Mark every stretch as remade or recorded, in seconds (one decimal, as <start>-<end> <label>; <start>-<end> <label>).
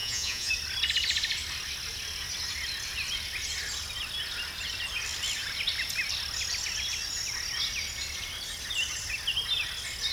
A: 0.0-0.5 remade; 0.5-10.1 recorded